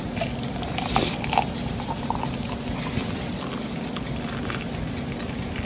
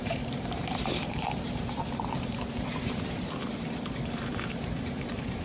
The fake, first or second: second